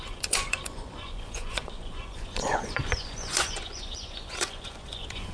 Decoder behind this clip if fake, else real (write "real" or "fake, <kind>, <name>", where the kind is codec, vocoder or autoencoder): fake, vocoder, Vocos